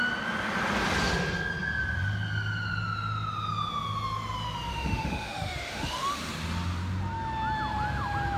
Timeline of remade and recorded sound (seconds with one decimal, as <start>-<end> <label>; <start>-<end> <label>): 0.0-4.7 recorded; 4.7-6.3 remade; 6.3-8.4 recorded